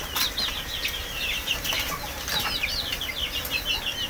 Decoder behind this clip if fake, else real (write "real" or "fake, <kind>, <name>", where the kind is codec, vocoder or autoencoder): real